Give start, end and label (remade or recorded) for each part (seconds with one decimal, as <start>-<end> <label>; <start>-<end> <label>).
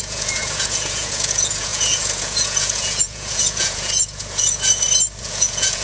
0.0-4.7 remade; 4.7-5.2 recorded; 5.2-5.8 remade